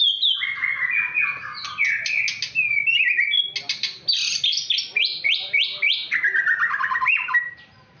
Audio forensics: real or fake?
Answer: real